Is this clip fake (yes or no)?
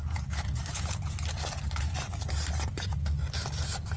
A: no